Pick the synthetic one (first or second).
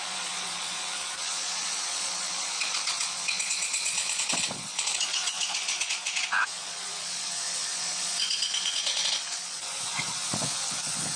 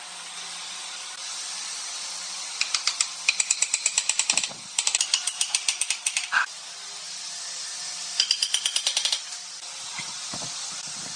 first